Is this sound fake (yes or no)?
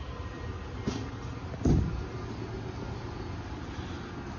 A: no